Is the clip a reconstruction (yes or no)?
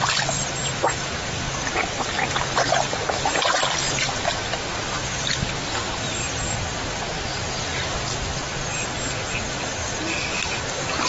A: no